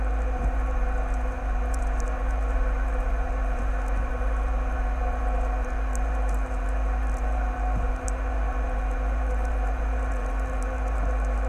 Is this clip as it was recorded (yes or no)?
no